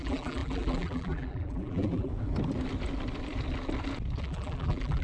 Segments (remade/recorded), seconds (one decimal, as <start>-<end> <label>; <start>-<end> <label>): 0.0-2.1 remade; 2.1-4.2 recorded; 4.2-5.0 remade